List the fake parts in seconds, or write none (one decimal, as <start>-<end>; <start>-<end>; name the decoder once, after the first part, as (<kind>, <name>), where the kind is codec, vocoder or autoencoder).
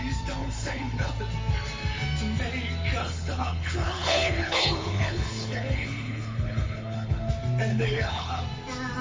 0.4-1.1 (codec, HILCodec); 3.0-7.3; 7.7-8.4